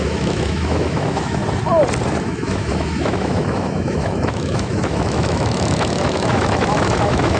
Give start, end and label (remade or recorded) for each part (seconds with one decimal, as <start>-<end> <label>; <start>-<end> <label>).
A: 0.0-1.4 remade; 1.4-2.2 recorded; 2.2-7.4 remade